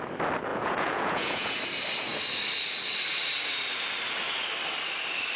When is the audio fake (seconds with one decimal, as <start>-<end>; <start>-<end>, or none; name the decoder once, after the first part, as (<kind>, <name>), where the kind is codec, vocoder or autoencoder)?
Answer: 0.5-1.6 (vocoder, Vocos)